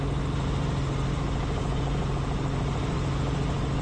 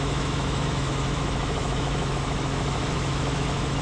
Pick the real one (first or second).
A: first